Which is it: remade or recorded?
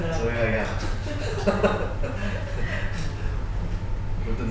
recorded